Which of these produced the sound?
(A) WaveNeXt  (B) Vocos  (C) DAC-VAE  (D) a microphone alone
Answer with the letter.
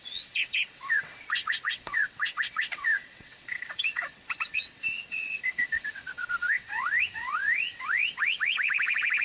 A